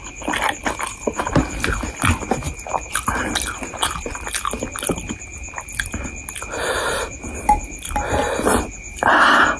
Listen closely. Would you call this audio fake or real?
real